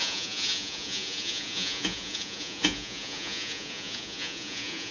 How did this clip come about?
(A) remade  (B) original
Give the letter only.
A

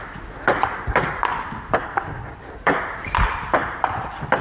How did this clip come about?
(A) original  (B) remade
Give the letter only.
A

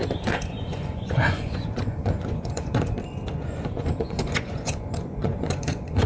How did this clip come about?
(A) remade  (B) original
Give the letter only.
A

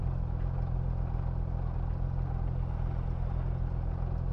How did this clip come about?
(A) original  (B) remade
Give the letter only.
A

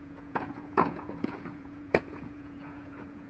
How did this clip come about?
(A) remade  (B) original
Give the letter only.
A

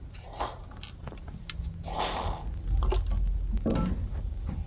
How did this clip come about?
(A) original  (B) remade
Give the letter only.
A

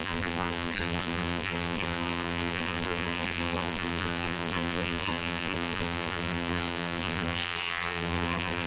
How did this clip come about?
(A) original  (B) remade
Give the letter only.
B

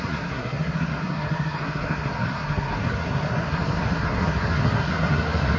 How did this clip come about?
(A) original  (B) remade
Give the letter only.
B